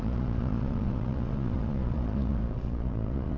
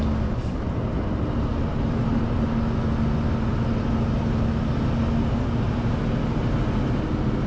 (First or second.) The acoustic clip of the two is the second